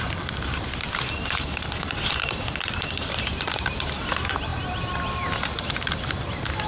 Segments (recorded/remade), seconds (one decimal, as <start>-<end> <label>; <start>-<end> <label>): 0.0-4.5 remade; 4.5-6.0 recorded; 6.0-6.7 remade